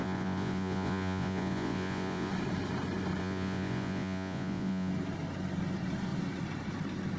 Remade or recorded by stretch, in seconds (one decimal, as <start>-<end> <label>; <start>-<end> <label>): 0.0-2.3 remade; 2.3-3.2 recorded; 3.2-4.9 remade; 4.9-7.2 recorded